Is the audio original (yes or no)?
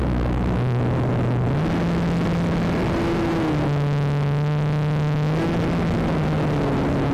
yes